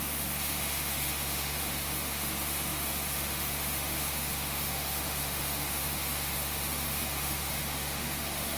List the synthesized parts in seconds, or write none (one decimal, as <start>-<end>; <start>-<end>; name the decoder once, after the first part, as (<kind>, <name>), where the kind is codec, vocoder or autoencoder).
0.0-8.6 (autoencoder, DAC-VAE)